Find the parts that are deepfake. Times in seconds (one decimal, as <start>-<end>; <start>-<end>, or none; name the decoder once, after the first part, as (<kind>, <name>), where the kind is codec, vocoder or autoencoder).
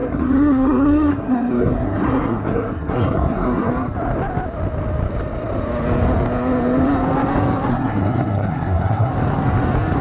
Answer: 0.0-3.7 (codec, SNAC); 7.7-9.1